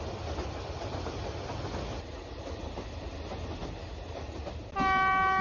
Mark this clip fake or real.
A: real